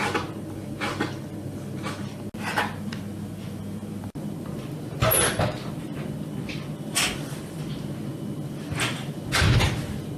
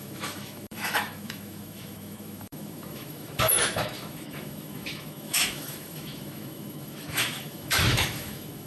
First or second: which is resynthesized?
second